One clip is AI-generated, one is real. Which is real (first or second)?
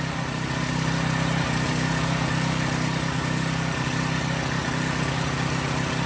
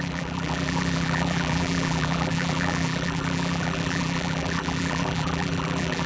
first